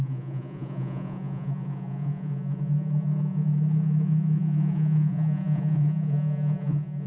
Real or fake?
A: fake